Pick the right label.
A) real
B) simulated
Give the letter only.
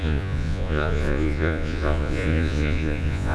B